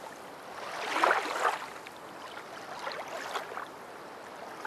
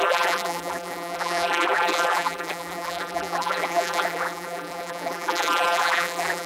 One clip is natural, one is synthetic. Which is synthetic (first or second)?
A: second